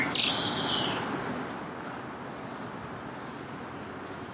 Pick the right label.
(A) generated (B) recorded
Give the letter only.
B